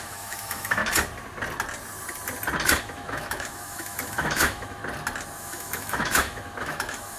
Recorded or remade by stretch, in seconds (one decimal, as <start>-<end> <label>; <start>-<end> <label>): 0.0-0.8 remade; 0.8-2.8 recorded; 2.8-4.8 remade; 4.8-5.4 recorded; 5.4-7.2 remade